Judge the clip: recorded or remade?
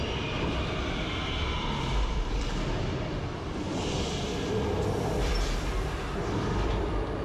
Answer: recorded